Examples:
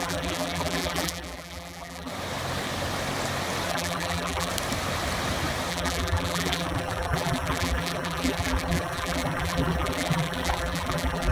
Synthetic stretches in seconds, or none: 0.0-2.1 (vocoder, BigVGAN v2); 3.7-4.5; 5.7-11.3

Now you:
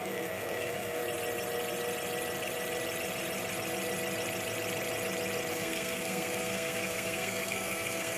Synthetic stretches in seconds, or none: 0.0-1.0 (codec, SNAC); 5.5-8.2

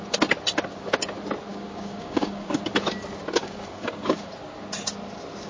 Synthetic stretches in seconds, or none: 1.5-2.7 (codec, DAC); 3.4-4.3

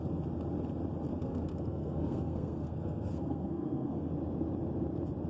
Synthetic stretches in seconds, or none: 1.1-4.1 (codec, SNAC)

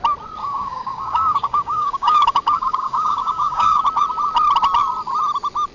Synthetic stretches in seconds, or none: 0.4-3.8 (codec, DAC)

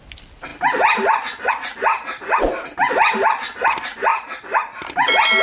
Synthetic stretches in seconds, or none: none

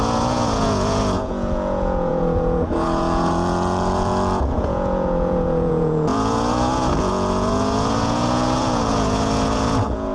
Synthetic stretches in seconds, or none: 0.0-10.1 (vocoder, Vocos)

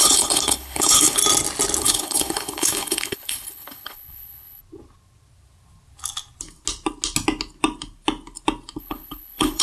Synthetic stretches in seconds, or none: 0.0-1.2 (codec, HILCodec); 1.8-4.6; 8.8-9.6